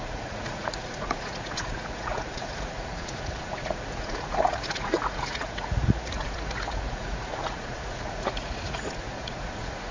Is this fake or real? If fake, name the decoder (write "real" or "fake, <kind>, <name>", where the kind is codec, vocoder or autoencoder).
fake, vocoder, Vocos